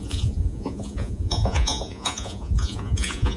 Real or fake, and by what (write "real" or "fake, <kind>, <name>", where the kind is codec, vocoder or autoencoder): fake, vocoder, Vocos